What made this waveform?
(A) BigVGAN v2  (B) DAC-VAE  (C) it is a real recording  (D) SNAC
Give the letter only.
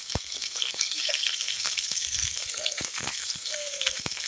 D